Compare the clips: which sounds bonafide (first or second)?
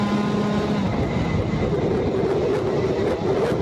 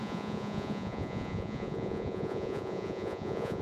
first